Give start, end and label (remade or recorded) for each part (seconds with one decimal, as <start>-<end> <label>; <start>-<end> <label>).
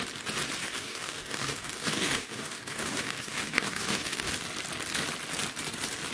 0.0-0.6 recorded; 0.6-4.3 remade; 4.3-6.1 recorded